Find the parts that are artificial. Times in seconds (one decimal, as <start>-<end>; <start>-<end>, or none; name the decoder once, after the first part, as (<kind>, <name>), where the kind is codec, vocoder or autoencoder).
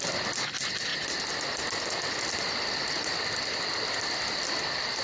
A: none